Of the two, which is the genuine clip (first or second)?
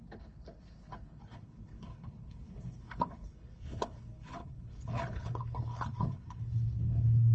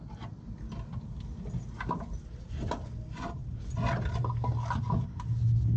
second